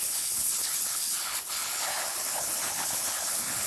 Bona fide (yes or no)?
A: no